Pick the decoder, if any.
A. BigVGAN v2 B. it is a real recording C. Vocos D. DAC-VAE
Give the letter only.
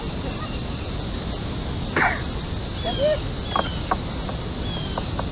B